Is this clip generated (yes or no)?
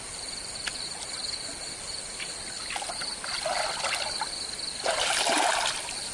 no